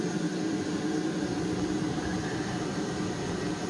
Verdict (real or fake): real